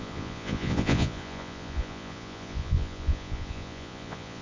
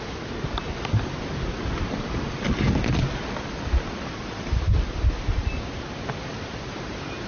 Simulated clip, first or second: first